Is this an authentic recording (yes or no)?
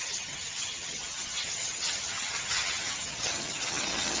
no